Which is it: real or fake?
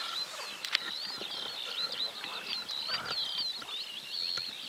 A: real